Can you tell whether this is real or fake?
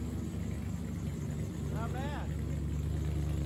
real